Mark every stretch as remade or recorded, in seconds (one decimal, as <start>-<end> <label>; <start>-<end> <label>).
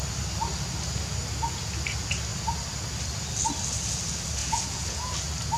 0.0-4.4 recorded; 4.4-5.1 remade; 5.1-5.6 recorded